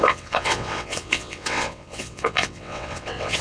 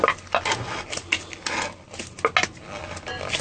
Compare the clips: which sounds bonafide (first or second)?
second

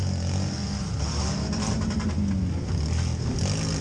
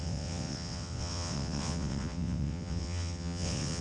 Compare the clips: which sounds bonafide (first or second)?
first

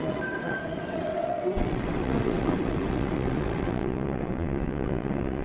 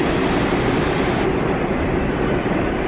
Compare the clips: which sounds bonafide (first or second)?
second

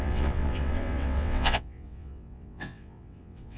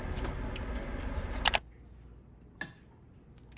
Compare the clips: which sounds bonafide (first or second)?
second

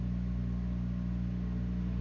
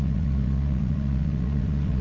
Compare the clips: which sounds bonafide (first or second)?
first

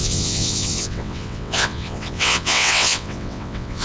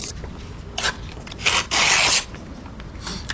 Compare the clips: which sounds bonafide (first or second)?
second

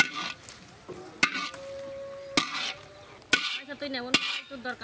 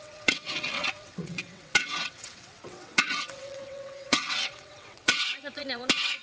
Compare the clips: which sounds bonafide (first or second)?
first